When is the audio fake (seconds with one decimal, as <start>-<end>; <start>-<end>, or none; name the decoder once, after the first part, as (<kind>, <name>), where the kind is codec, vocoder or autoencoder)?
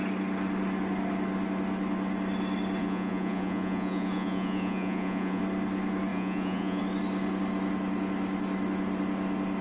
2.8-5.4 (vocoder, Vocos); 6.1-6.8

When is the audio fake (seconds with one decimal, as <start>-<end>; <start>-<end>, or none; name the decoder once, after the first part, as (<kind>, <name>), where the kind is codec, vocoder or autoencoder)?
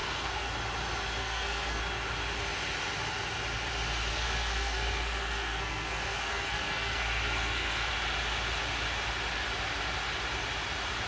0.0-0.5 (codec, SNAC); 1.2-1.8; 4.1-7.9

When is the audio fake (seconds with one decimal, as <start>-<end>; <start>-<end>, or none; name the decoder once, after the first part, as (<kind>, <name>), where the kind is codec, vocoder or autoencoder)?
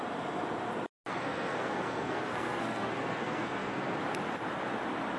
1.1-4.0 (codec, SNAC)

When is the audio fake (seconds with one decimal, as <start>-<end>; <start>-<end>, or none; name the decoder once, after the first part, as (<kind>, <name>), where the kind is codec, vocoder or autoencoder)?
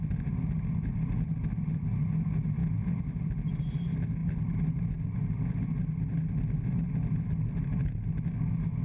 none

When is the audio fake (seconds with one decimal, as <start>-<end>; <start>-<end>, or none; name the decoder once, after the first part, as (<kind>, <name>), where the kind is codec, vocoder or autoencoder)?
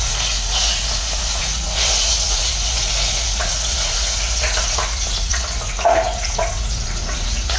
0.0-7.6 (vocoder, Vocos)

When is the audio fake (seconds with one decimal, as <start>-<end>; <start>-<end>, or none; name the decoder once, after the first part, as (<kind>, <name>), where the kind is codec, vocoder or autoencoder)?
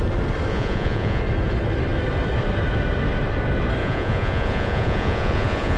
0.5-1.2 (vocoder, Vocos); 3.8-5.8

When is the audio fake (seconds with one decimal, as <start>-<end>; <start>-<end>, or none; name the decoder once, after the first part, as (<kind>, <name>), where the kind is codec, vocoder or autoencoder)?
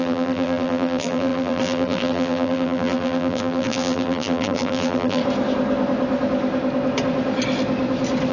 0.0-5.2 (vocoder, BigVGAN v2)